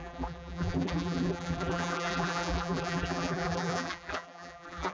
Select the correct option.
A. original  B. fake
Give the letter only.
B